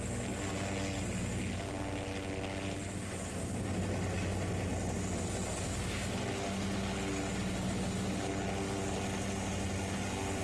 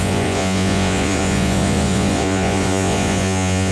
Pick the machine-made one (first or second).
second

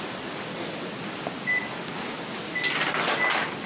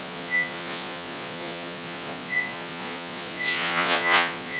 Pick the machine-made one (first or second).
second